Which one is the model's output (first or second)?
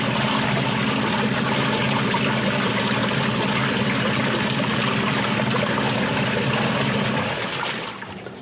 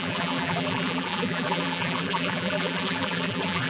second